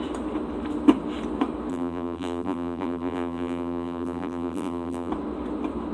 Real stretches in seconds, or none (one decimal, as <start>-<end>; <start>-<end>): 0.0-1.7; 5.1-5.9